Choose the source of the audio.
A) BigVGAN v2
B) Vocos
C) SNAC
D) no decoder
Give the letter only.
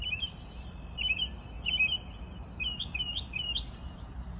D